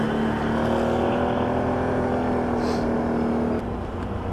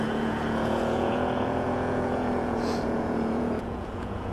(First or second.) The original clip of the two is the first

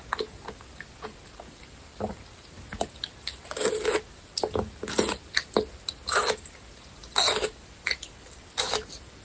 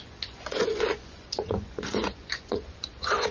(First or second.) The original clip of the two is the first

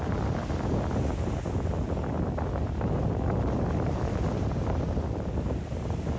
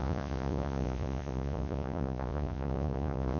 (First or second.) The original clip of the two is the first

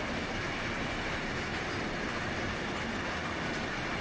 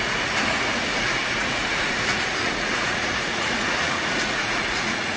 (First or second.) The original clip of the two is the first